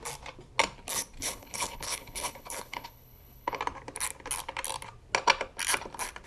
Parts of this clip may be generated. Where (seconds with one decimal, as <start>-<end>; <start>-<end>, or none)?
1.2-3.6

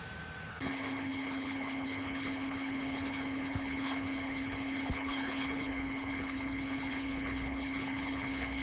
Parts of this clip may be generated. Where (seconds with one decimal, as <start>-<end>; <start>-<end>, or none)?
0.5-8.6

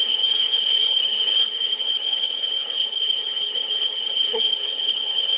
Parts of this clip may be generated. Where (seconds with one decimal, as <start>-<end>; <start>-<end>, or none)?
0.0-5.4